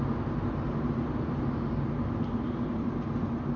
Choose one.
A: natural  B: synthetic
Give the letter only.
A